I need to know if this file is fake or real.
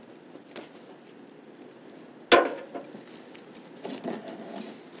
real